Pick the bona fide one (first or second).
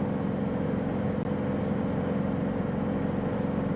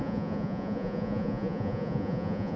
first